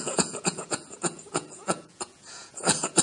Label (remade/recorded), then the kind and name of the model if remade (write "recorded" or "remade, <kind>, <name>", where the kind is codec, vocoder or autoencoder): remade, vocoder, Vocos